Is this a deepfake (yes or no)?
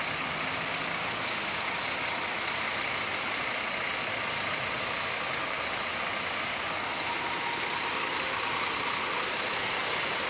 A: no